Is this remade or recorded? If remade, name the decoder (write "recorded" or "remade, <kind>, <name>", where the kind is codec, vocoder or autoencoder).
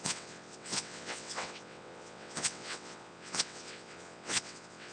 remade, vocoder, WaveNeXt